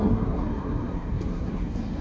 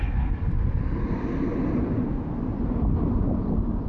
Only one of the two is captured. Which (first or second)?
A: second